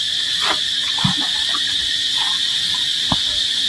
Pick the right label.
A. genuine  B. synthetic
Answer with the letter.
A